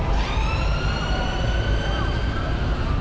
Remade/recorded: remade